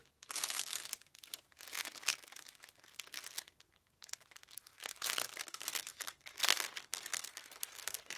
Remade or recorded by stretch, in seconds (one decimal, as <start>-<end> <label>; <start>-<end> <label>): 0.0-8.2 remade